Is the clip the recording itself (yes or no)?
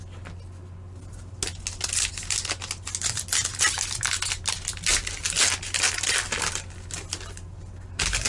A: yes